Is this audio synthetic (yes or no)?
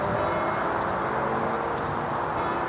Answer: no